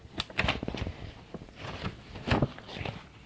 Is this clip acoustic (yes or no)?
yes